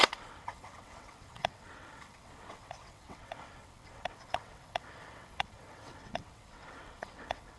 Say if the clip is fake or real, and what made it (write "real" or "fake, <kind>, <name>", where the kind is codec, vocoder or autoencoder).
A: fake, vocoder, WaveNeXt